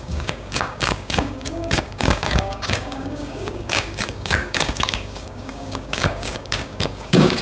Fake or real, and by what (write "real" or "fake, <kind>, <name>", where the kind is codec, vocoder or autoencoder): fake, codec, DAC